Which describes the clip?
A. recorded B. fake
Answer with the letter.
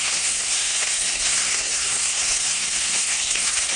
B